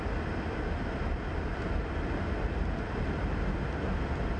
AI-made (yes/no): no